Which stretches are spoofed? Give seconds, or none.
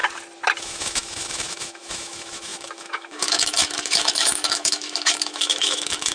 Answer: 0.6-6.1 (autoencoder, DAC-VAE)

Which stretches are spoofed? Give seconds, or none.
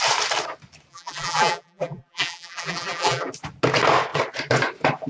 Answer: 0.9-3.3 (vocoder, BigVGAN v2)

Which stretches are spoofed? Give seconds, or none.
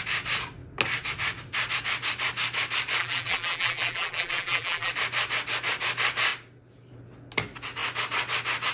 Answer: 3.0-4.9 (vocoder, BigVGAN v2)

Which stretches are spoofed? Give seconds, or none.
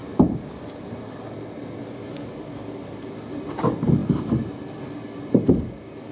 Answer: none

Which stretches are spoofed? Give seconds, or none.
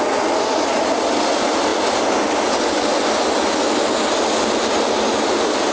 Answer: none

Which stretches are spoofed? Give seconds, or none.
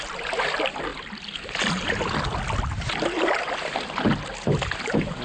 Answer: none